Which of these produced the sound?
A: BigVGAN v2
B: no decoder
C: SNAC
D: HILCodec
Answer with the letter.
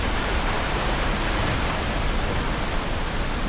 A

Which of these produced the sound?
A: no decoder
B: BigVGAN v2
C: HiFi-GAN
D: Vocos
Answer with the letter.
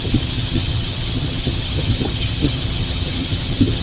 C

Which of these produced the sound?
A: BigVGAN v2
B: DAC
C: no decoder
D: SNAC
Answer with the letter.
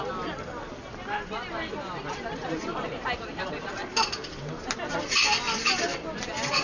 C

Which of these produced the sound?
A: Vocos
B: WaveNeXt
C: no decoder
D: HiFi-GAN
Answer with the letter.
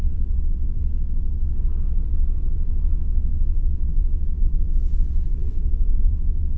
B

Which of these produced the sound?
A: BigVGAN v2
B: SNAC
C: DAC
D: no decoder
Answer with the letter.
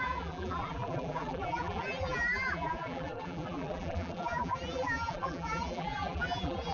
A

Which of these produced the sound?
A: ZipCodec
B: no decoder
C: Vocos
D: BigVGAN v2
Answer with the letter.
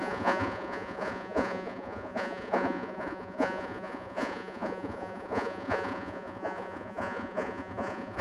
C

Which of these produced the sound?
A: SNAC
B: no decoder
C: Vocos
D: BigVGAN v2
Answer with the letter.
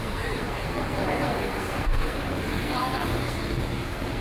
A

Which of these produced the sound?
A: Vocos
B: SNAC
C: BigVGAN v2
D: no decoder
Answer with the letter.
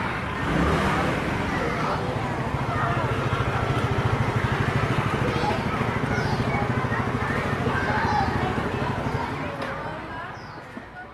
D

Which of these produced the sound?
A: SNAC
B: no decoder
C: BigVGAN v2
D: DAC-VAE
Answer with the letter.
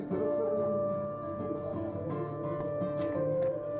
B